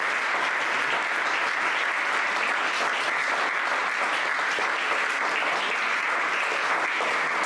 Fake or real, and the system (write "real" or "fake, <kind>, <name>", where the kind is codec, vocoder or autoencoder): real